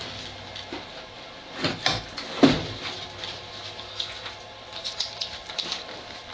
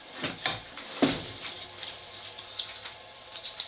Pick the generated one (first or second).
second